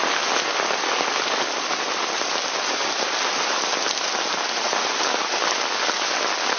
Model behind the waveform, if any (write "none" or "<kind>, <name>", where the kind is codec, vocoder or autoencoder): none